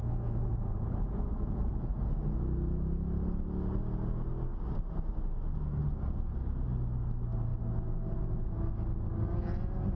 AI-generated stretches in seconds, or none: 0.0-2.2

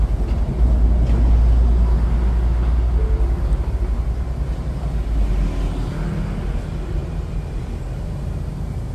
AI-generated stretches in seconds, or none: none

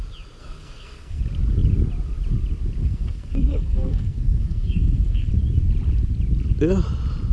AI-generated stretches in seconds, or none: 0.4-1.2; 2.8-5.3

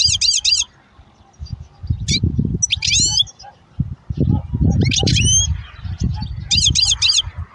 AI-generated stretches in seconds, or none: none

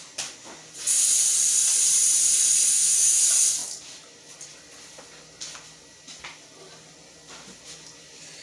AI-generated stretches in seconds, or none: 2.7-3.2

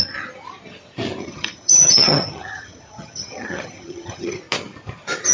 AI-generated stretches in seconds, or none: 1.2-4.4

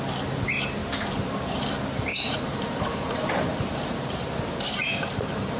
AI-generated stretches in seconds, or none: 0.8-1.6; 2.1-5.6